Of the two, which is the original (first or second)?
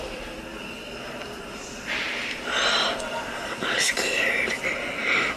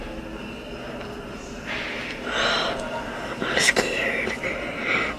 second